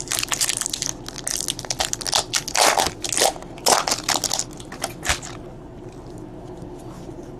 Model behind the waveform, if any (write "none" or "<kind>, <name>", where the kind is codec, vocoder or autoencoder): none